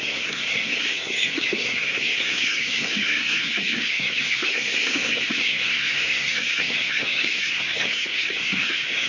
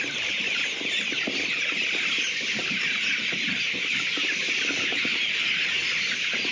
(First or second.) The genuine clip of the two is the second